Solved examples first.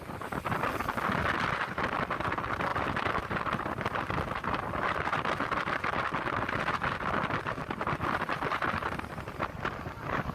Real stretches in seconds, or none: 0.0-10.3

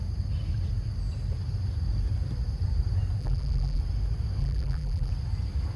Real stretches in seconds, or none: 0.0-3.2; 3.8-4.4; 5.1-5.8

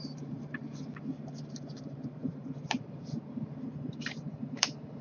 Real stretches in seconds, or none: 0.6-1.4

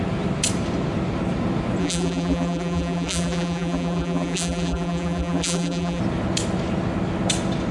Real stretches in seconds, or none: 0.0-1.8; 6.0-7.7

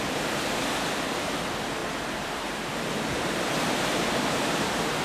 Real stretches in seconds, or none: none

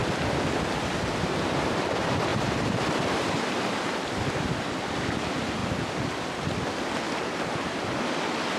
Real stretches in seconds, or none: 0.0-2.3; 4.2-8.6

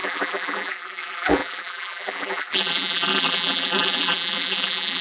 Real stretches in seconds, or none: none